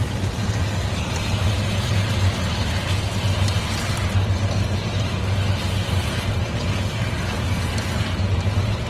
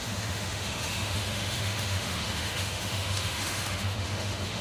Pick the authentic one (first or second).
first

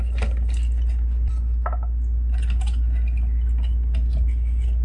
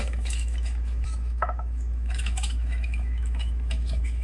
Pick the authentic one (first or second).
first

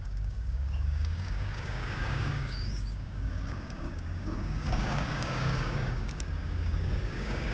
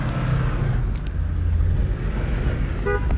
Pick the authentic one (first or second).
second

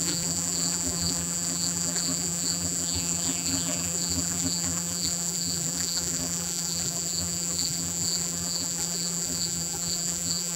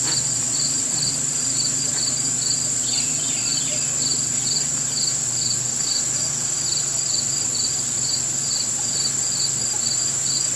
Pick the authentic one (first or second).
second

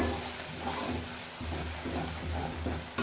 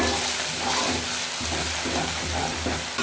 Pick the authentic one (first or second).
first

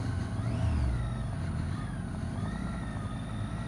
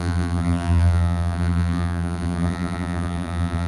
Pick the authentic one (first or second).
first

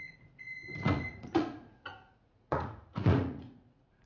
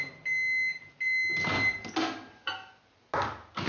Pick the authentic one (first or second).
second